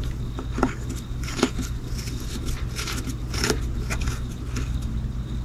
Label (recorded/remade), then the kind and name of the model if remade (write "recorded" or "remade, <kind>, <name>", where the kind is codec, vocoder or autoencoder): recorded